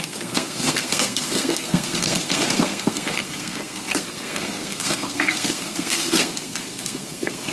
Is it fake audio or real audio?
fake